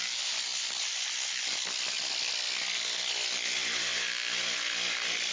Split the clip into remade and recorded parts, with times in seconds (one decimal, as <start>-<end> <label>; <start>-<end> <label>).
0.0-5.3 recorded